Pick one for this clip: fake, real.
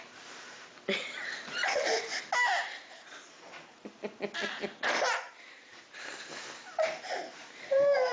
fake